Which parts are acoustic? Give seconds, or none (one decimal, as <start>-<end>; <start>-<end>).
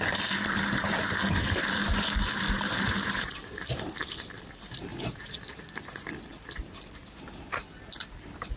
0.0-4.9; 5.7-8.6